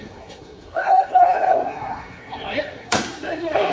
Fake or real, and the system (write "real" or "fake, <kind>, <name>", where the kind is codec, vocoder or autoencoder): fake, codec, SNAC